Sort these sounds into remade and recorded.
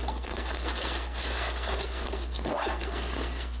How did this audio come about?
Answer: remade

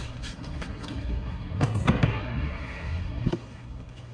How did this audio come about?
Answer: remade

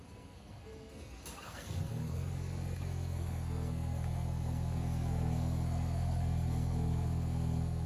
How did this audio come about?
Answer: remade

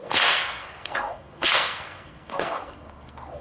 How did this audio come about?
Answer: remade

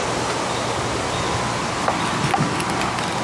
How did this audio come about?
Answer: recorded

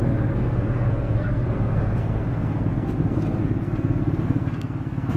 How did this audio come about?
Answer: remade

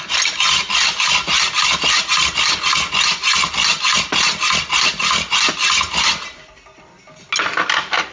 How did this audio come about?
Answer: recorded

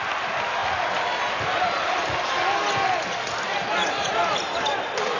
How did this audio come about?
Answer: recorded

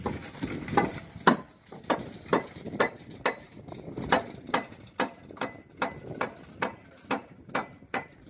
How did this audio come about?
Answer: recorded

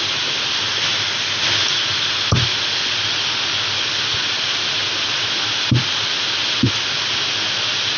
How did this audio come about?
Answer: recorded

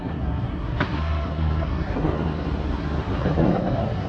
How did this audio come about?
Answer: remade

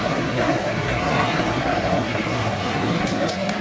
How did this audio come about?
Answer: remade